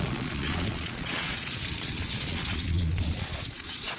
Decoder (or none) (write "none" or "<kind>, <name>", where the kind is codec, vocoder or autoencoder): vocoder, Vocos